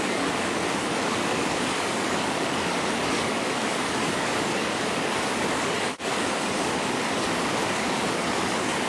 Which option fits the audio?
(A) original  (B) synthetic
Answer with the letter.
B